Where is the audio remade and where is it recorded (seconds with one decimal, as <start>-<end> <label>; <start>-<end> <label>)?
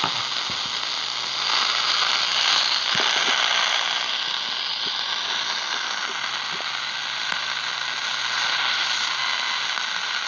0.0-10.3 recorded